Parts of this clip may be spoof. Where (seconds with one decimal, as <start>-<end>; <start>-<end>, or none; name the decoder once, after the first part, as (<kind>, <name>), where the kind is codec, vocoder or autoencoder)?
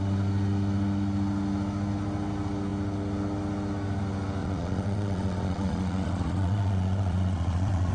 4.4-7.9 (vocoder, Vocos)